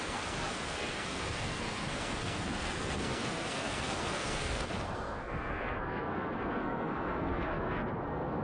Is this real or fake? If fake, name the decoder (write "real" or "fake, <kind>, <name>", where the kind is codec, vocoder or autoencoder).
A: fake, codec, SNAC